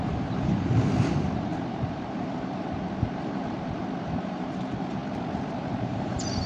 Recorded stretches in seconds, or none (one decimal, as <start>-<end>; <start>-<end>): 5.0-5.6